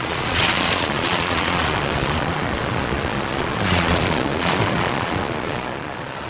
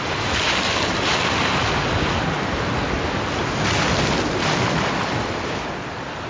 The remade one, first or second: first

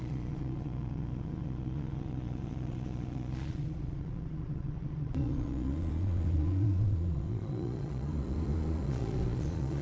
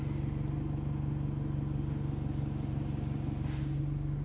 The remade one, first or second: first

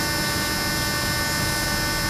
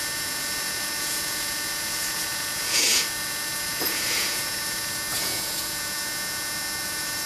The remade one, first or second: second